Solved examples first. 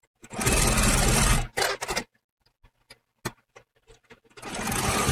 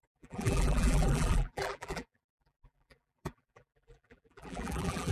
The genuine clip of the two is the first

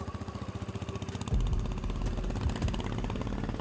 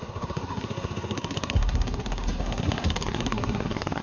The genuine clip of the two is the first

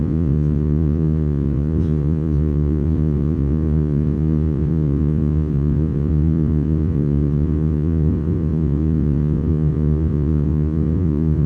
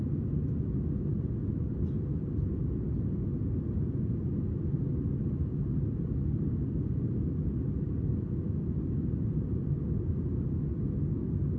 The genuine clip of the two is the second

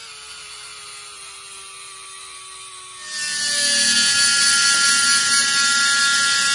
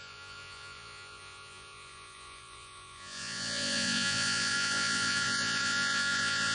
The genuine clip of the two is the first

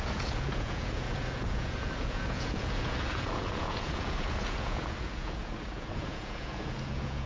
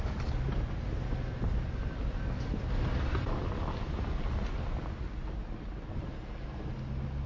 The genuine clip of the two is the second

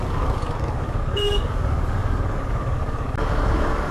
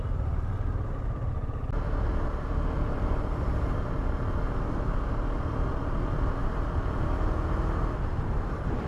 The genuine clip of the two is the second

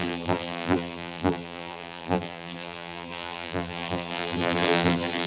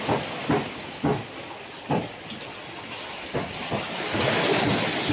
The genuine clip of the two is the second